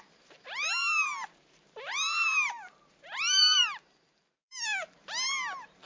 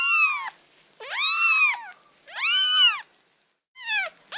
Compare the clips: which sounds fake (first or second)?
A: first